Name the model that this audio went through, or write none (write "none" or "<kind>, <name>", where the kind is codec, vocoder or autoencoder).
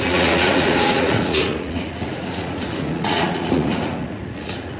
vocoder, Vocos